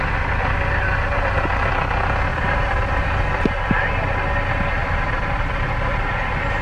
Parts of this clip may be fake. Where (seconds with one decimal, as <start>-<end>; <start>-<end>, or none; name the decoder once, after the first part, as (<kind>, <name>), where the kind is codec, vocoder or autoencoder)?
2.3-3.8 (vocoder, BigVGAN v2); 4.8-5.6